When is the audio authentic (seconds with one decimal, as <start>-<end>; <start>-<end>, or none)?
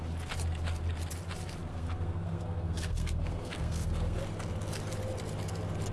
0.0-1.7; 4.2-5.9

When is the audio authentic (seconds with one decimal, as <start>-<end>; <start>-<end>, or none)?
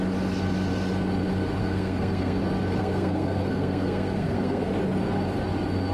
0.0-1.6; 2.4-2.8; 4.7-5.9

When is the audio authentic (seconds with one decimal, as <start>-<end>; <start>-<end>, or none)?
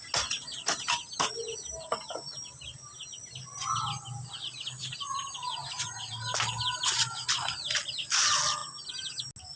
0.0-9.6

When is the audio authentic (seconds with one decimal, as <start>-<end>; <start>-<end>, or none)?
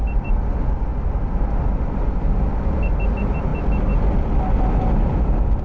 0.0-5.6